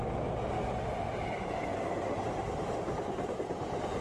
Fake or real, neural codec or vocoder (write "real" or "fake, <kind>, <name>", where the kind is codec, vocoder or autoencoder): real